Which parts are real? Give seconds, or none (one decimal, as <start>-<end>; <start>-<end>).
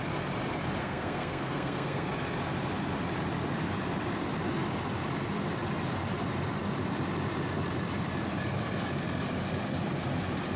0.0-0.8; 2.1-10.6